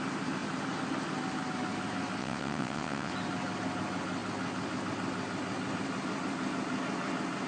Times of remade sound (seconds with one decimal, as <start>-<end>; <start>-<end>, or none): 2.2-3.1